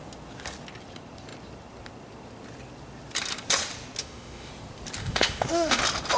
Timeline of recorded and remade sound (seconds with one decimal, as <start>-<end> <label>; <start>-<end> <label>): 0.0-4.0 recorded; 4.0-4.5 remade; 4.5-5.0 recorded; 5.0-5.8 remade; 5.8-6.2 recorded